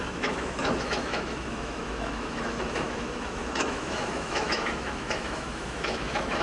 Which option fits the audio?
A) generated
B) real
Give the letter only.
A